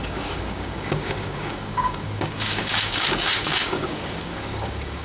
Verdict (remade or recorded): remade